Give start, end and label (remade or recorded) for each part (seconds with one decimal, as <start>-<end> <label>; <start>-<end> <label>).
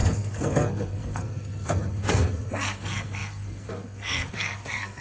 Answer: 0.0-5.0 remade